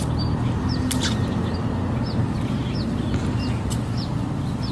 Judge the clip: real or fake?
real